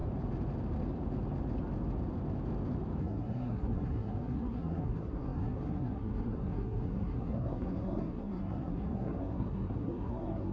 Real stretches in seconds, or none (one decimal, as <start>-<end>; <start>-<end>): 0.0-3.0

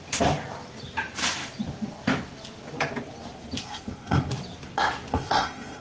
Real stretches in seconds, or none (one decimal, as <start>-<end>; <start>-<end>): 0.0-3.6; 4.3-5.1

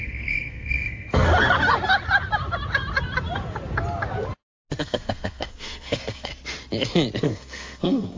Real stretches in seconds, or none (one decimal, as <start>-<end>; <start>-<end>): 1.3-4.8; 6.3-7.2

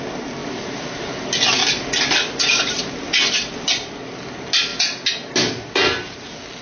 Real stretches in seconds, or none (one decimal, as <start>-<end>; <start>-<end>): 0.0-6.6

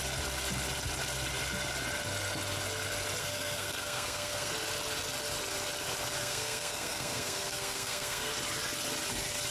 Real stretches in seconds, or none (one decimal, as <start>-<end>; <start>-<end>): 0.0-3.2; 4.5-6.2; 8.3-9.5

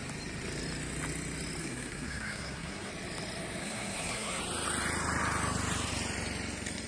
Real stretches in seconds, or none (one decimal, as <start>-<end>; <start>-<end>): 0.0-1.6; 2.9-3.6; 4.4-6.9

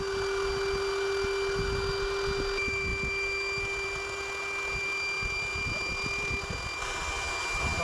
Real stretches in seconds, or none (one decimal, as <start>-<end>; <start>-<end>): 0.0-7.8

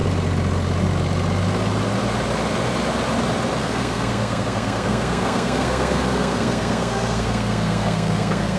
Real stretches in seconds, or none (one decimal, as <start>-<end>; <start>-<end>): 0.0-3.6